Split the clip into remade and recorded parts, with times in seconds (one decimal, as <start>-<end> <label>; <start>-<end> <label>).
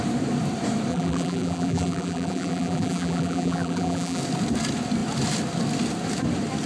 0.0-0.9 recorded; 0.9-4.2 remade; 4.2-6.7 recorded